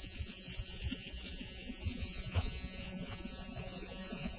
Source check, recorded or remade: remade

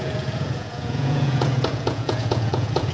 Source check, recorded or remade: remade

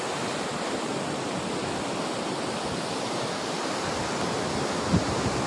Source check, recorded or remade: recorded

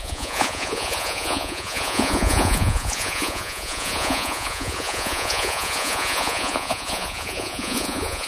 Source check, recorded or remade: remade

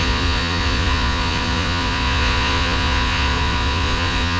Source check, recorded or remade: remade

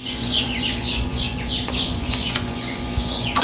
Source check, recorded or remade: remade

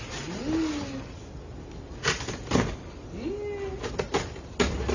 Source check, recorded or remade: recorded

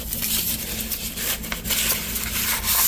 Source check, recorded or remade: recorded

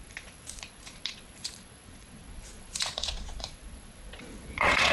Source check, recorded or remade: remade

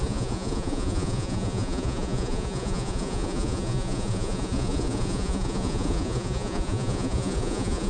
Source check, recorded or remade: remade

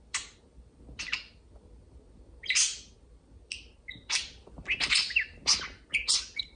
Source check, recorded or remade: recorded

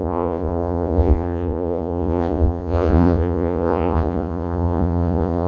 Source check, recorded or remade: remade